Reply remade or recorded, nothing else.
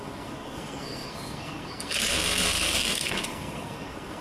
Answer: remade